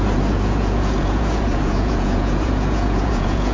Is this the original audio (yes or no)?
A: no